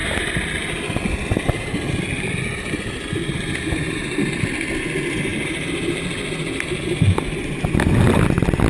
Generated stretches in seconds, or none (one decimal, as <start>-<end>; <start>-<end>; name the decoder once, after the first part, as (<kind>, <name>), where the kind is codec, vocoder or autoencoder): none